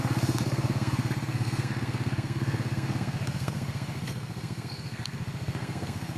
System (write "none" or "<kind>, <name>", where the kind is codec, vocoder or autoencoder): codec, SNAC